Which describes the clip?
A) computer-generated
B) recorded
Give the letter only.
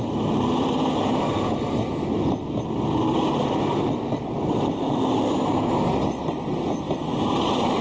B